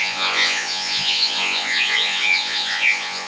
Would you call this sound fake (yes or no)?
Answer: yes